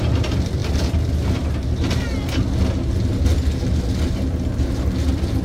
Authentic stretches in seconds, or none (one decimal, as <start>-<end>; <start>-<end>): 0.0-5.4